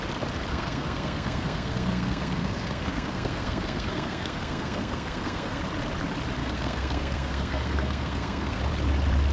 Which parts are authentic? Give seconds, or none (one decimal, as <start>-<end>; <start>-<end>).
0.0-0.5; 5.6-6.4; 8.6-9.3